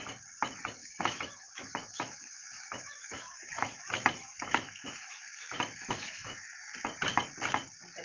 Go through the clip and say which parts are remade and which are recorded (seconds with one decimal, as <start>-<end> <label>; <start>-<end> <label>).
0.0-0.8 recorded; 0.8-3.8 remade; 3.8-4.2 recorded; 4.2-6.7 remade; 6.7-8.0 recorded